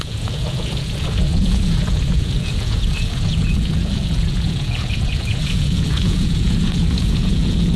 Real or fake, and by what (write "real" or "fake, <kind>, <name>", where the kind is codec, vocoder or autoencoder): fake, vocoder, Vocos